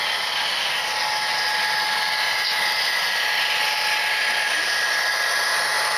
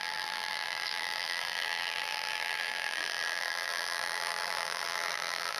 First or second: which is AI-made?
second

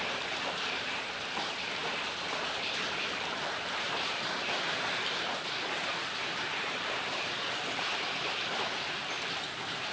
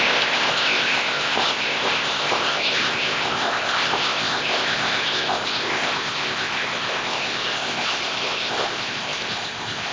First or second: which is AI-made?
second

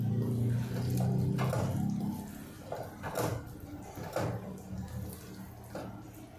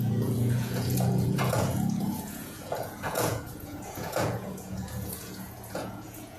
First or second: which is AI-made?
second